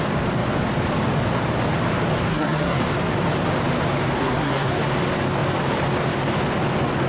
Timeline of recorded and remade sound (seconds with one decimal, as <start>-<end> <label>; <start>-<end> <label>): 0.0-2.3 recorded; 2.3-2.8 remade; 2.8-4.2 recorded; 4.2-4.7 remade; 4.7-7.1 recorded